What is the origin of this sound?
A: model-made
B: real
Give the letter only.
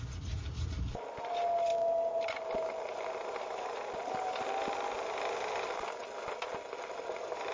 B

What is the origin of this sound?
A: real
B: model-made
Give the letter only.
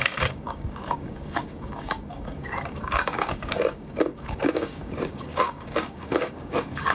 B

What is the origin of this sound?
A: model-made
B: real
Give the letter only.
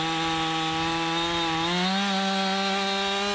B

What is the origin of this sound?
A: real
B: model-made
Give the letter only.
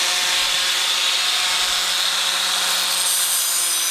A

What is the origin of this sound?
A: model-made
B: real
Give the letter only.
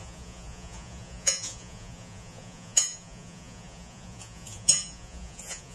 A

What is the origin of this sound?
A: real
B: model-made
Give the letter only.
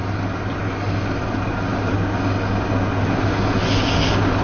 A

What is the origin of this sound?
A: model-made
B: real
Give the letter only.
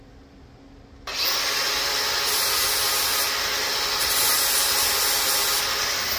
B